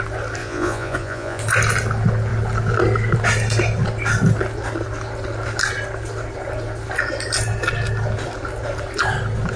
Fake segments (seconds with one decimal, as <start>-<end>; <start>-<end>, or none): 0.4-1.4